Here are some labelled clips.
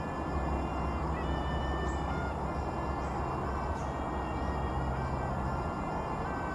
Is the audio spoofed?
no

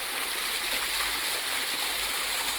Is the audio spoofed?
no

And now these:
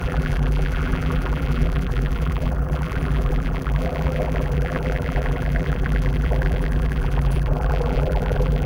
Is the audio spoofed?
yes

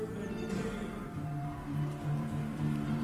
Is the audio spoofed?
yes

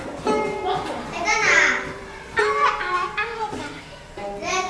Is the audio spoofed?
yes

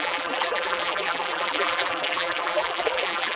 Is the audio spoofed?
yes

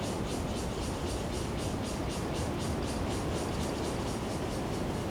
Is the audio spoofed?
no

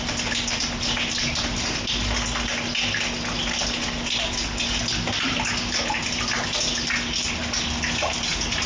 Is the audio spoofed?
no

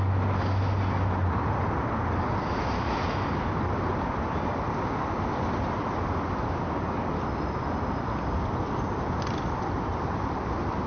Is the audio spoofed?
no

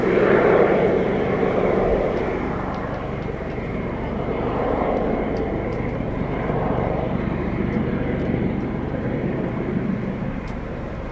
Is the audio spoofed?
yes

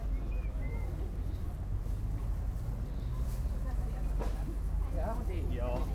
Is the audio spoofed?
no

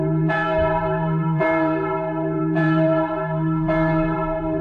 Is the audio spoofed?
yes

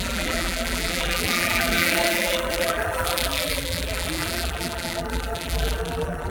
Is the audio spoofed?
yes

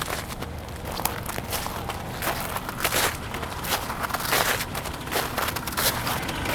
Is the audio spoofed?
no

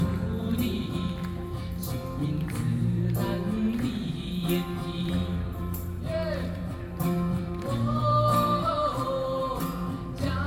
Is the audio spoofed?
yes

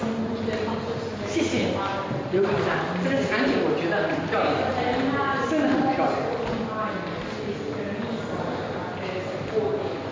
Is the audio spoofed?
no